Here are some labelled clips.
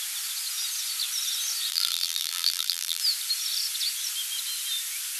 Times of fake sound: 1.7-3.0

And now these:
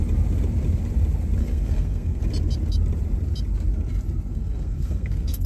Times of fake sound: 1.4-2.2; 4.3-5.5

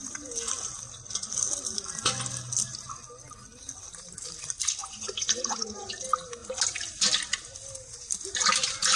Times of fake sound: 4.8-5.9

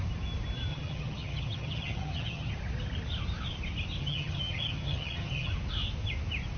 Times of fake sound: 0.7-2.5; 4.0-5.5

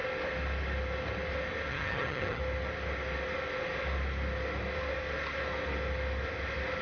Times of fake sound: 1.7-2.4